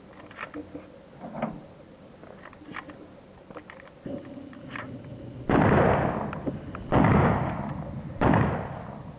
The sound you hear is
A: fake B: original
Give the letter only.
B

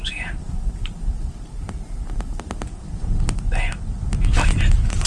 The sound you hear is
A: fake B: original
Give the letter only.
B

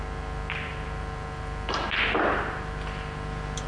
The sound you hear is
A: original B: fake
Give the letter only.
B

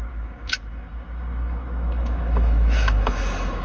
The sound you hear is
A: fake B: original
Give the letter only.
A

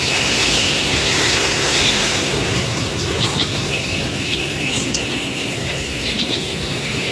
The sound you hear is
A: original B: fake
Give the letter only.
B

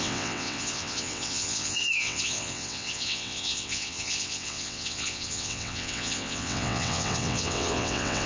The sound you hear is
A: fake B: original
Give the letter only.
A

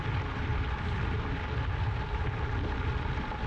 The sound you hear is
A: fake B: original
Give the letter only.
B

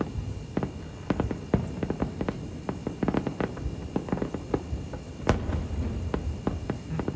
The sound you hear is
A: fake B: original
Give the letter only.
B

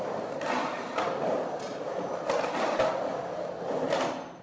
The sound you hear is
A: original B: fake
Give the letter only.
A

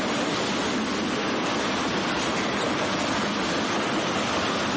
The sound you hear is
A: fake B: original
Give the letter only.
B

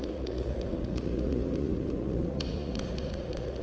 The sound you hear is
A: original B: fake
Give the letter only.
B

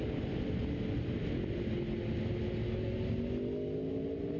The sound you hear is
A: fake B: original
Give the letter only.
B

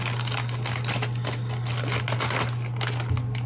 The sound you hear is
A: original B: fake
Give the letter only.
A